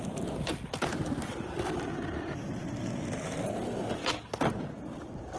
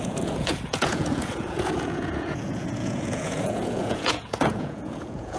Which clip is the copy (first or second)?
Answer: second